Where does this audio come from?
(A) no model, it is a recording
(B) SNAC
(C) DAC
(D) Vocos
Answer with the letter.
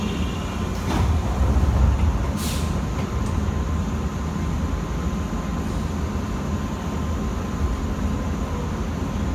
A